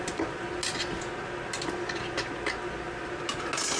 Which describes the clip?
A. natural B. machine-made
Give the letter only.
A